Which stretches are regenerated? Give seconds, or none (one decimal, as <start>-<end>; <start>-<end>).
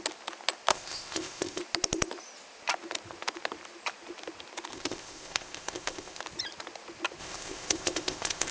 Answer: 0.7-1.6; 4.7-6.2; 7.2-8.5